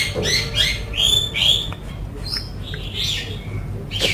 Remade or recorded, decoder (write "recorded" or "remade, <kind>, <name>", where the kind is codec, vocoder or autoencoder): recorded